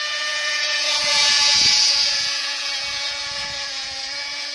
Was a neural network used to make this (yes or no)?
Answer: yes